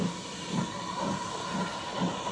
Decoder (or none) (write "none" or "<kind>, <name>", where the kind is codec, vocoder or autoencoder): none